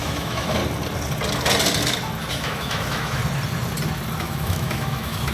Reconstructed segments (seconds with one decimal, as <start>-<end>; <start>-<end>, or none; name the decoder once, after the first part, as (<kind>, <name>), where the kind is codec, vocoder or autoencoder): 0.0-0.6 (autoencoder, DAC-VAE); 2.3-3.2; 4.2-5.3